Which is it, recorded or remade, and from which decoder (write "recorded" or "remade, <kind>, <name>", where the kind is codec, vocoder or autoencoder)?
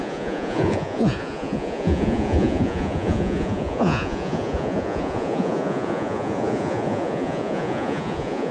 remade, vocoder, Vocos